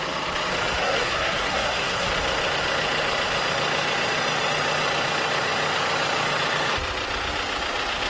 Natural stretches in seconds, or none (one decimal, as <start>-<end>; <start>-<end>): 0.0-0.8; 2.1-8.1